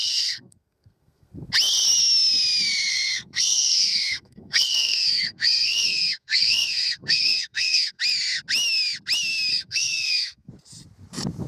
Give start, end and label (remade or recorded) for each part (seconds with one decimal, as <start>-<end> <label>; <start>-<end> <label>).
0.0-1.3 remade; 1.3-2.9 recorded; 2.9-8.0 remade; 8.0-9.5 recorded; 9.5-10.5 remade; 10.5-11.5 recorded